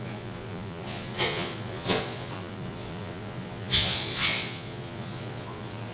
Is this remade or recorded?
remade